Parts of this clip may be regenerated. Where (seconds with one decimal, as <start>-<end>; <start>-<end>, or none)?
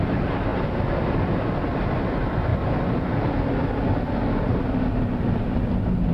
none